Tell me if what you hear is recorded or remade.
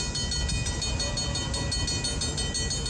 recorded